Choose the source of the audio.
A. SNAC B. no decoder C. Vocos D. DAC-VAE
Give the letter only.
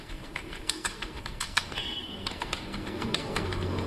A